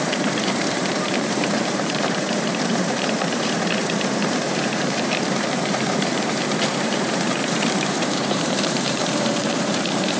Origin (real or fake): fake